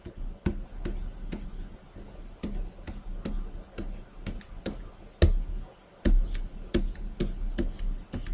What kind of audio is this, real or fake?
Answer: real